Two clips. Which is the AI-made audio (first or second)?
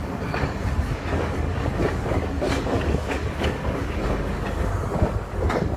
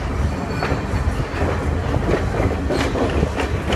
first